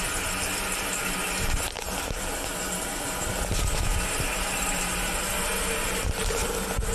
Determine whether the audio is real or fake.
real